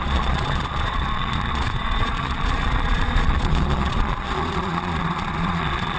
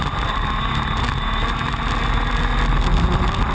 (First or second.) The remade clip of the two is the first